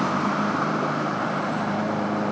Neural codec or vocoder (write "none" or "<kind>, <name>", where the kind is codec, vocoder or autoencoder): vocoder, BigVGAN v2